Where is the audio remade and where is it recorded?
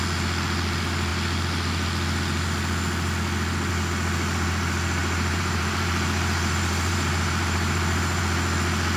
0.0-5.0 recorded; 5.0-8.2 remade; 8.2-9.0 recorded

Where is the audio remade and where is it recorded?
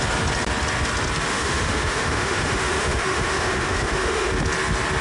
0.0-1.3 recorded; 1.3-4.3 remade; 4.3-5.0 recorded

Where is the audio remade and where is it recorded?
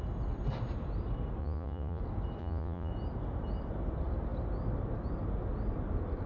0.0-1.4 recorded; 1.4-2.0 remade; 2.0-2.4 recorded; 2.4-2.9 remade; 2.9-6.3 recorded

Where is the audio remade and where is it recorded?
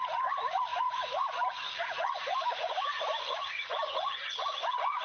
0.0-5.0 remade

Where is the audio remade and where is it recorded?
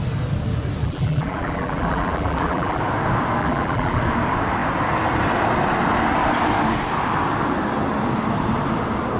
0.0-0.8 recorded; 0.8-2.8 remade; 2.8-3.4 recorded; 3.4-4.0 remade; 4.0-9.2 recorded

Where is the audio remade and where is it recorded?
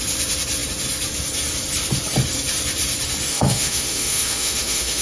0.0-3.3 recorded; 3.3-5.0 remade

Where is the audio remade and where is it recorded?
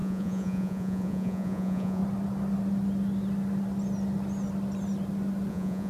0.0-2.0 remade; 2.0-5.5 recorded; 5.5-5.9 remade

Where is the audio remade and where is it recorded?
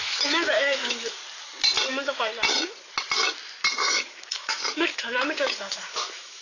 0.0-1.2 remade; 1.2-1.9 recorded; 1.9-2.3 remade; 2.3-3.9 recorded; 3.9-6.4 remade